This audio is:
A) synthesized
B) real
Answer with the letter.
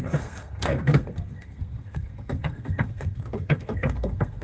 A